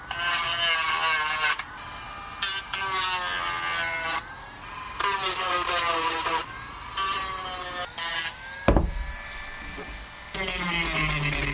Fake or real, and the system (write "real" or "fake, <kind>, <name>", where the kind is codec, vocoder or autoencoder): real